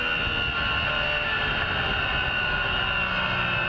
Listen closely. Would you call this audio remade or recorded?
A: recorded